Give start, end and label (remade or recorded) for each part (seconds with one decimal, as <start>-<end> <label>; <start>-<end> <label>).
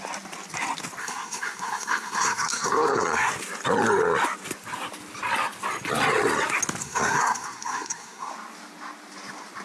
0.0-1.0 recorded; 1.0-3.3 remade; 3.3-6.8 recorded; 6.8-8.3 remade; 8.3-9.6 recorded